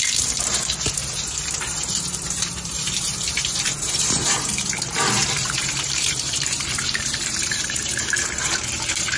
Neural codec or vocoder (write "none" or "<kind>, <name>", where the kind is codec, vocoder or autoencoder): vocoder, BigVGAN v2